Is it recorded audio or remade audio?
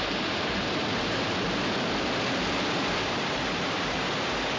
remade